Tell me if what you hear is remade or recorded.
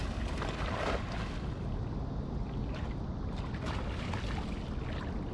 recorded